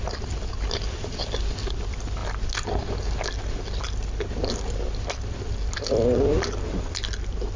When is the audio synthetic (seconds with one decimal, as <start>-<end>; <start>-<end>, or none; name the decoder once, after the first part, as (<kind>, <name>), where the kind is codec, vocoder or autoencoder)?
none